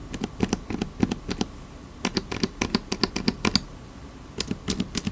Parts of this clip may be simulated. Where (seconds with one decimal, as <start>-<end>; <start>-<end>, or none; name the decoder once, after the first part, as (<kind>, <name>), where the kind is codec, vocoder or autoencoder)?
none

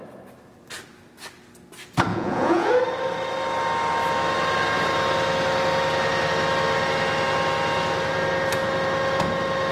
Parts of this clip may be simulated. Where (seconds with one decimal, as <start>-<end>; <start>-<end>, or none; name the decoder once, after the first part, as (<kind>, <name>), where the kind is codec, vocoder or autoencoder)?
2.1-2.7 (vocoder, Vocos)

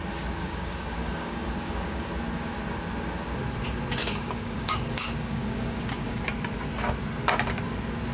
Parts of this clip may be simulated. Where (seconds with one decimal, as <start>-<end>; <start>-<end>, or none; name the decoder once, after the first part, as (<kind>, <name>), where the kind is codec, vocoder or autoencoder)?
0.4-2.1 (codec, DAC); 4.0-6.2

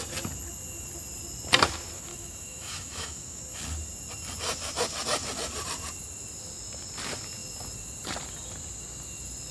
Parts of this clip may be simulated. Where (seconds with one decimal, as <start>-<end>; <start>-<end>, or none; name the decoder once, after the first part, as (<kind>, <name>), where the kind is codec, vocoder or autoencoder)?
2.1-3.4 (autoencoder, DAC-VAE)

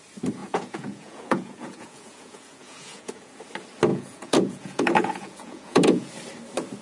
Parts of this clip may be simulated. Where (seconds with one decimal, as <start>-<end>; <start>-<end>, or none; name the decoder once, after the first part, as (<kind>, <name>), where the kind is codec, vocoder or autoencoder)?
0.4-3.3 (vocoder, Vocos); 3.9-6.1

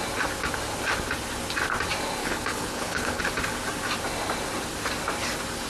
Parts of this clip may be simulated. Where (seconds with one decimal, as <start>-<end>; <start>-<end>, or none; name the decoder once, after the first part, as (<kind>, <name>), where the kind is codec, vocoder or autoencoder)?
2.2-3.2 (codec, HILCodec)

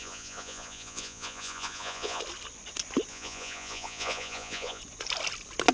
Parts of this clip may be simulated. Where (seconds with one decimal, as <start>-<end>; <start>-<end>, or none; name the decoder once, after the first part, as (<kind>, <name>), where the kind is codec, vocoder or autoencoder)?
0.0-2.2 (vocoder, Vocos); 3.1-4.8